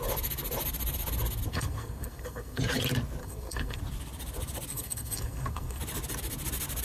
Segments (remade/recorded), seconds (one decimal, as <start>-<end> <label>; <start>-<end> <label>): 0.0-1.5 recorded; 1.5-2.6 remade; 2.6-3.2 recorded; 3.2-3.8 remade; 3.8-4.7 recorded; 4.7-5.8 remade; 5.8-6.8 recorded